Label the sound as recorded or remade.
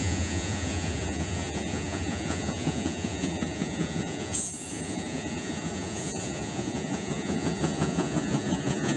remade